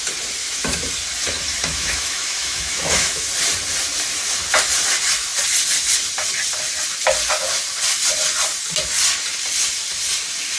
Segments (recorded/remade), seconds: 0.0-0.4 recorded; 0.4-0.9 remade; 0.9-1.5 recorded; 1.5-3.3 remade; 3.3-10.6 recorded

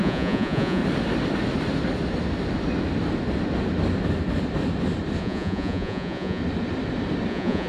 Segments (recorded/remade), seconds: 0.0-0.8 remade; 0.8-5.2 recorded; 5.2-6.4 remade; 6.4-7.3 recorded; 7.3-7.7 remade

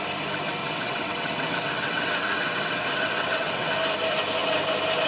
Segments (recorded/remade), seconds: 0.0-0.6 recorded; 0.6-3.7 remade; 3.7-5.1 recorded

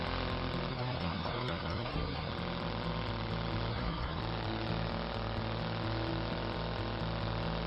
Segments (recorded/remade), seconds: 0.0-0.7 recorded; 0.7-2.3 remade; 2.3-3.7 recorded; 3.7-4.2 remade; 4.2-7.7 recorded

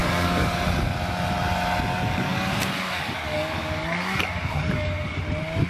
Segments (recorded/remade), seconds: 0.0-0.6 remade; 0.6-1.9 recorded; 1.9-5.2 remade; 5.2-5.7 recorded